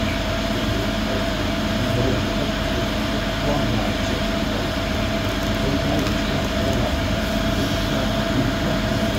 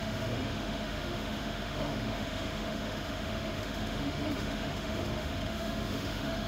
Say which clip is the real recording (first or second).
first